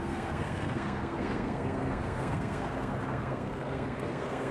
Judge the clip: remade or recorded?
remade